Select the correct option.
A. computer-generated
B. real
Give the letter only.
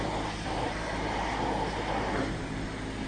B